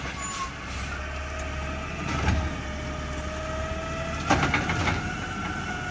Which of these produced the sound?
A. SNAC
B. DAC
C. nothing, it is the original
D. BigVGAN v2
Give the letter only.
C